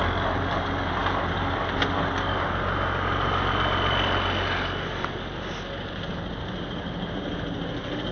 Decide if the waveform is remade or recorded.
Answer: recorded